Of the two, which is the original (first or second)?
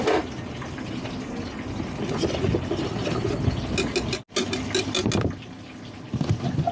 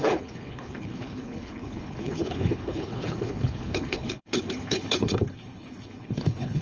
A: first